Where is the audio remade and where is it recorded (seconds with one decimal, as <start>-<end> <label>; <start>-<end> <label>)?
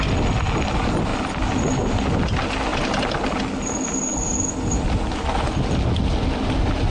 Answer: 0.0-6.9 recorded